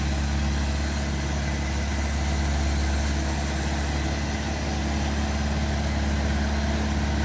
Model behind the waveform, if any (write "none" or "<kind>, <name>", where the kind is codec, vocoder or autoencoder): none